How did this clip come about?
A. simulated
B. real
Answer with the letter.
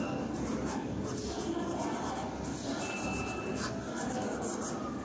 B